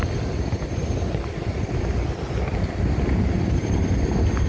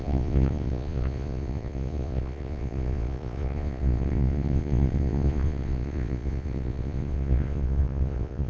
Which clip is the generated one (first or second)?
second